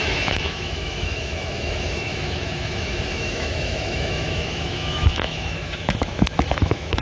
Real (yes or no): no